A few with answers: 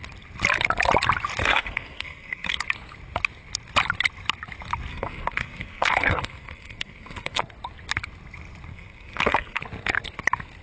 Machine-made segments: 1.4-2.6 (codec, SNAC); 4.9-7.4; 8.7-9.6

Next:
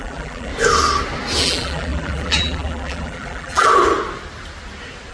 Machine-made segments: 0.0-0.5 (vocoder, BigVGAN v2); 1.4-3.7

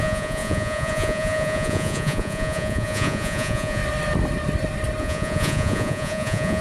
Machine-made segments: 0.0-3.8 (vocoder, Vocos); 5.0-6.6

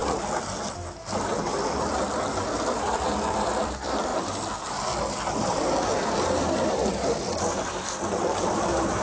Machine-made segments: 2.7-4.1 (vocoder, BigVGAN v2); 6.4-9.0

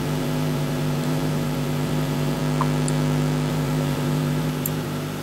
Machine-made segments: 0.0-2.4 (vocoder, BigVGAN v2); 3.5-5.2

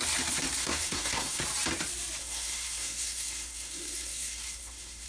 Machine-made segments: 0.6-1.4 (codec, SNAC); 2.2-5.1